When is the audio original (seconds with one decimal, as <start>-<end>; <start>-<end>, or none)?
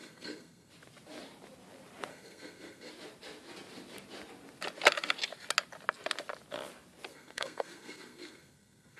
0.7-2.1; 2.9-7.1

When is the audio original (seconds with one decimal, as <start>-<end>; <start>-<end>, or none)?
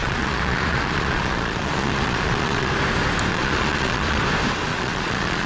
2.7-3.3; 4.2-4.7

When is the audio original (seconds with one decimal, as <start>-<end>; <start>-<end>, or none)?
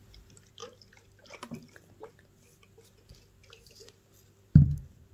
0.0-5.1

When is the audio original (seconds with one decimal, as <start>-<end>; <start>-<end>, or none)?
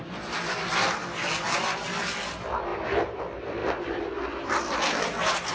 0.0-2.7; 3.2-3.6